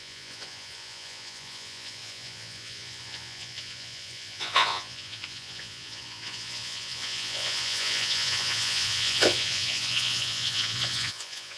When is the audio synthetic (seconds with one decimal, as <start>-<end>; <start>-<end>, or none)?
0.0-11.6